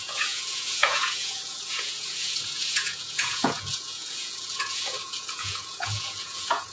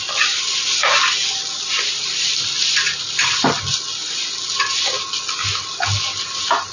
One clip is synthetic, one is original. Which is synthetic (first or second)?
first